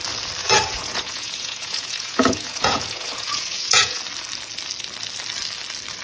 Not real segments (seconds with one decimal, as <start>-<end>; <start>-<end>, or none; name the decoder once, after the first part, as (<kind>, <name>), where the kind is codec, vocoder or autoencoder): 0.4-4.0 (vocoder, Vocos)